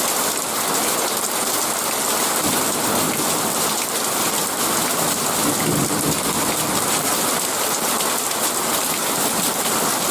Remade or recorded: remade